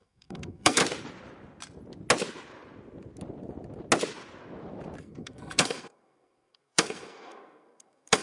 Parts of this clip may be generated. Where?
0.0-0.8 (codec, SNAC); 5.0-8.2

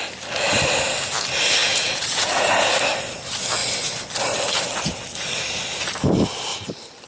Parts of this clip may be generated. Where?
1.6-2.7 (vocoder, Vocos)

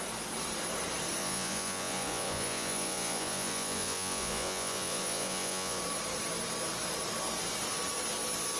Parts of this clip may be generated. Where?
1.2-5.8 (vocoder, Vocos)

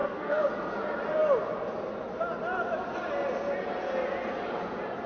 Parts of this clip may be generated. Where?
0.0-0.5 (codec, SNAC)

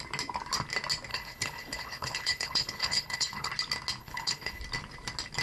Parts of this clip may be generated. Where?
1.1-3.5 (codec, HILCodec); 4.0-4.6

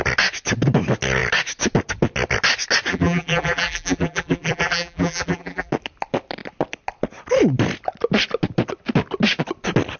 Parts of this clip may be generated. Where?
2.9-5.7 (vocoder, BigVGAN v2)

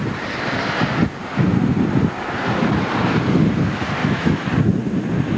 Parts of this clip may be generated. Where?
4.0-4.5 (autoencoder, DAC-VAE)